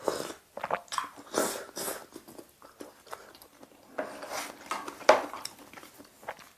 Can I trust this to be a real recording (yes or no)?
yes